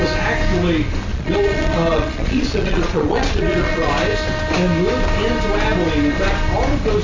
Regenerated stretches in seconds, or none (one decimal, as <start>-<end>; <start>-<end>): 1.1-3.9